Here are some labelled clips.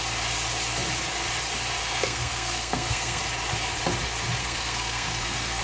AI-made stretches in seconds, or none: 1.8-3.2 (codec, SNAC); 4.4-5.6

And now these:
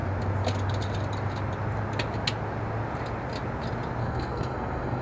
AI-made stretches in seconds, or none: 4.0-5.0 (codec, SNAC)

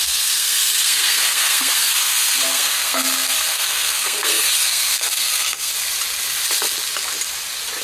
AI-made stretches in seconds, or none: 0.0-5.7 (codec, SNAC)

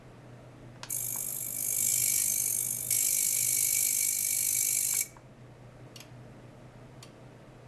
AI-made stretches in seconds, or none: none

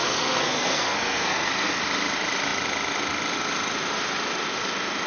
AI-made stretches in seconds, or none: 0.0-1.8 (codec, SNAC)

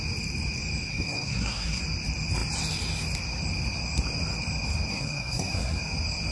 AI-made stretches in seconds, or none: 0.9-1.8 (codec, SNAC); 4.9-5.8